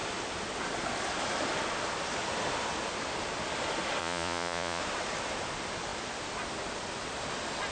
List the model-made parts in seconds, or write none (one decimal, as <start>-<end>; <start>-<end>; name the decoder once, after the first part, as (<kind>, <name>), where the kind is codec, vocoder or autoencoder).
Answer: 4.0-4.8 (vocoder, Vocos)